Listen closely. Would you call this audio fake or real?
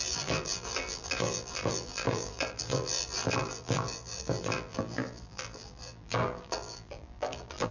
fake